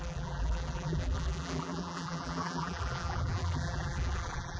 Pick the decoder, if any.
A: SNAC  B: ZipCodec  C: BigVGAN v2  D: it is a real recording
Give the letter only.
C